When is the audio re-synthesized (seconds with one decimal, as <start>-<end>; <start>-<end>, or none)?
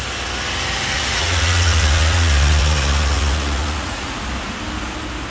0.9-4.1